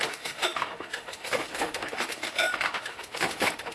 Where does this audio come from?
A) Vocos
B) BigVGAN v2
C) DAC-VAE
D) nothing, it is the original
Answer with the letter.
C